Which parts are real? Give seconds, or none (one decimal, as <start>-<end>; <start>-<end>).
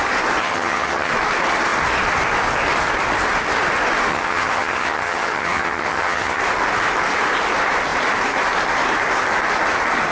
0.0-0.4; 1.1-4.1; 6.4-10.1